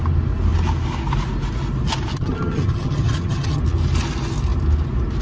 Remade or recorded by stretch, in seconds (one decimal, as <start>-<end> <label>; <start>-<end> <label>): 0.0-2.1 recorded; 2.1-3.6 remade; 3.6-5.2 recorded